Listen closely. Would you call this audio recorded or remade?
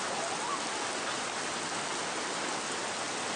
recorded